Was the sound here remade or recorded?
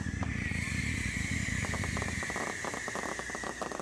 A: recorded